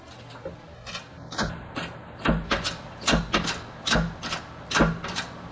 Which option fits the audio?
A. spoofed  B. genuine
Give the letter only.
B